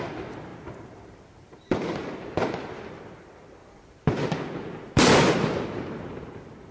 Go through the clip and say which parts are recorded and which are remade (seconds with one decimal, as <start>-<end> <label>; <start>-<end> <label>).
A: 0.0-0.5 recorded; 0.5-3.0 remade; 3.0-3.6 recorded; 3.6-4.4 remade; 4.4-6.7 recorded